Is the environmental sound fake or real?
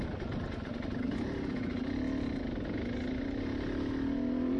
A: real